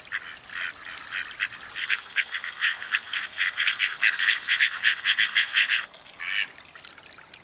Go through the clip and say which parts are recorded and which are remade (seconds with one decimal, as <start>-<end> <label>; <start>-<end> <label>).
0.0-1.8 recorded; 1.8-6.2 remade; 6.2-7.4 recorded